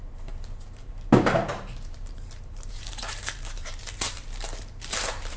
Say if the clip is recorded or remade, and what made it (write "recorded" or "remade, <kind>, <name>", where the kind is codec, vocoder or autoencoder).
remade, vocoder, BigVGAN v2